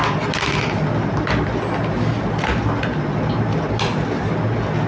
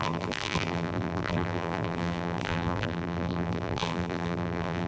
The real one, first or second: first